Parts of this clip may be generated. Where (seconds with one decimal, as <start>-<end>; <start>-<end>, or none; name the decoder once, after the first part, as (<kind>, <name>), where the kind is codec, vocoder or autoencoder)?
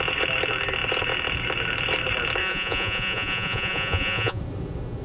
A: 2.4-4.4 (vocoder, Vocos)